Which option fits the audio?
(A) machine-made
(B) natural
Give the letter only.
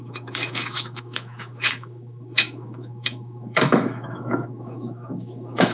A